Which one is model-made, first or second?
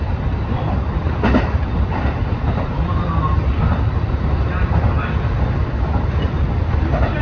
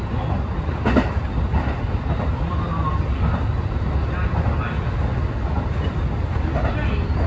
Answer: first